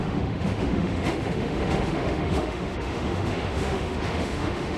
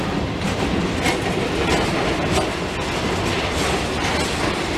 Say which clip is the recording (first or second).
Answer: second